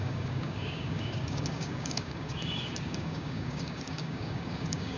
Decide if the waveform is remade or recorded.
remade